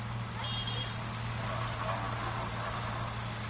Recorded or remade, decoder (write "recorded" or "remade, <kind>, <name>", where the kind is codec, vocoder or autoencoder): recorded